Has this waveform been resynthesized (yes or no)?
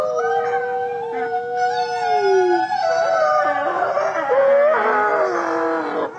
no